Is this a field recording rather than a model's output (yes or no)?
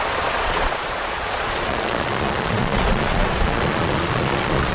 no